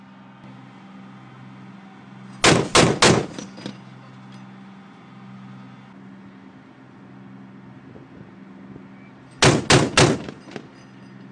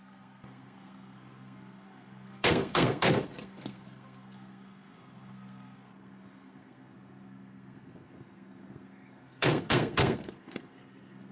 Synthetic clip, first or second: second